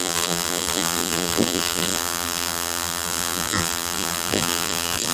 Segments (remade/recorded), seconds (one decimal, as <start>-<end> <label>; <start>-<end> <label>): 0.0-5.1 remade